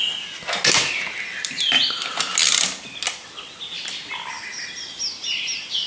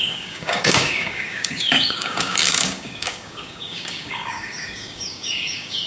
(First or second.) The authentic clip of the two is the first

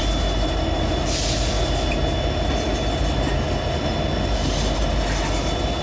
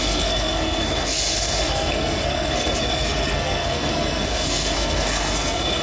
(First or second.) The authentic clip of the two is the first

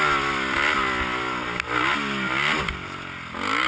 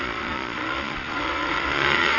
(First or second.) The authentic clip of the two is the first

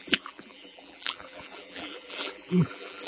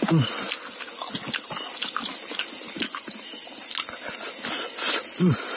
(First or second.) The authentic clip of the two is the second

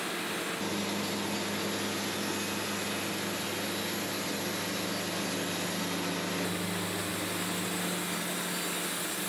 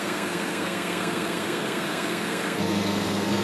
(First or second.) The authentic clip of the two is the first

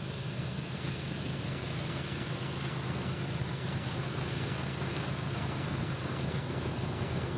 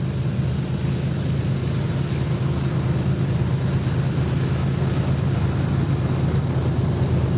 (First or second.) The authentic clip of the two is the second